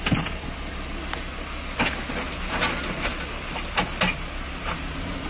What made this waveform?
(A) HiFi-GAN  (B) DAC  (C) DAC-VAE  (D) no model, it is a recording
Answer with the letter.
D